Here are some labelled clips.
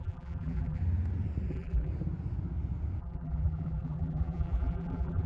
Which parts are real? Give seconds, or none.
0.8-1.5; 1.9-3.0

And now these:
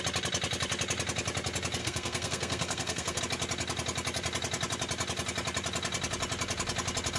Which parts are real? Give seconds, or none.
0.0-1.8; 3.2-7.2

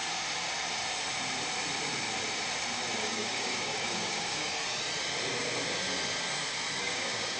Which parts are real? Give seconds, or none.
0.0-3.0; 4.5-6.8

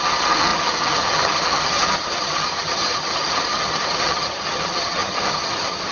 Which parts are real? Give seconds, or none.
none

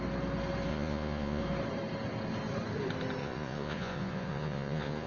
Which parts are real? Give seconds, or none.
0.0-0.7; 1.4-3.2

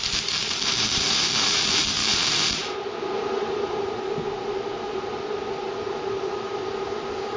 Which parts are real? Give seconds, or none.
none

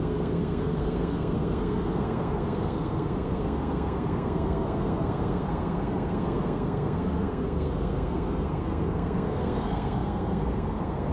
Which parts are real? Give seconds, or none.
none

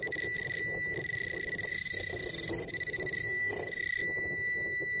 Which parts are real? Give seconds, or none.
0.0-1.7; 2.7-3.2; 3.8-5.0